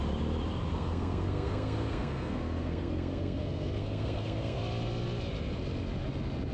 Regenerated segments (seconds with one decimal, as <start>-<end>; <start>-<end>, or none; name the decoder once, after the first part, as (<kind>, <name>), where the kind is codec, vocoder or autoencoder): 0.7-4.6 (codec, SNAC)

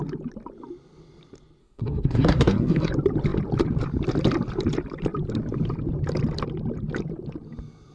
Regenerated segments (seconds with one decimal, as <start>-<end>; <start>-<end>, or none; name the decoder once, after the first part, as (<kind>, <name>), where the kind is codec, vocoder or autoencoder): 1.6-2.9 (codec, SNAC)

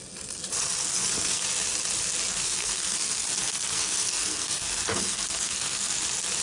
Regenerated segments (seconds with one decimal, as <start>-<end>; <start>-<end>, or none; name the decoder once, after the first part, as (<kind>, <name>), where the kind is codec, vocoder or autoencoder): 0.8-1.4 (codec, SNAC); 2.3-6.0

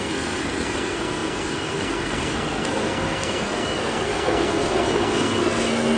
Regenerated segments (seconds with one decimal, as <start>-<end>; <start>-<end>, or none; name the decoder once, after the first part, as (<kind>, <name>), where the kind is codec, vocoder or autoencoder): 0.0-6.0 (codec, SNAC)

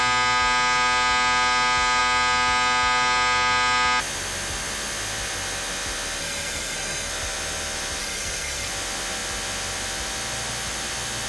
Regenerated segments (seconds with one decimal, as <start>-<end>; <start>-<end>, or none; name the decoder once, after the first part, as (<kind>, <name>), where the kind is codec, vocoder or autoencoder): 6.2-7.1 (codec, SNAC); 8.0-8.7

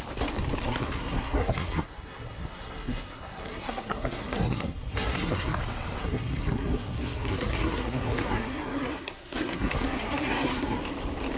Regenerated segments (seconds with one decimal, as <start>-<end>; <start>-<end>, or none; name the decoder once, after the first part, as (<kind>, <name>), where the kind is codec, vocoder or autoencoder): 0.6-5.6 (codec, SNAC); 6.0-10.8

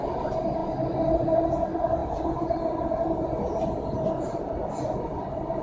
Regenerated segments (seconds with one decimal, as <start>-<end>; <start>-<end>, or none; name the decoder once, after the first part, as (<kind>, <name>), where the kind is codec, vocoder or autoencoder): none